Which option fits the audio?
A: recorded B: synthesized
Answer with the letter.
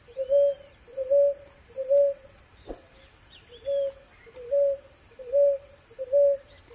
A